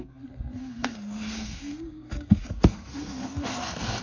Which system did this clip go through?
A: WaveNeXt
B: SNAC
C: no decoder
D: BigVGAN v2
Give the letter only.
B